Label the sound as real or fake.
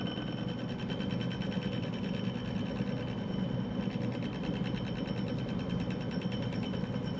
real